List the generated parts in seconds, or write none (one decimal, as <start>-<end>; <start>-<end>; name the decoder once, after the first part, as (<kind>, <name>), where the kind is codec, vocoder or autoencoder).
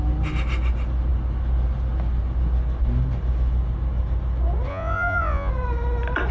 4.7-5.5 (vocoder, Vocos)